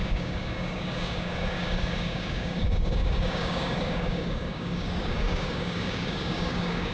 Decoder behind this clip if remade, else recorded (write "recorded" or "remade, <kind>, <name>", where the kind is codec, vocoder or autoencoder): remade, codec, DAC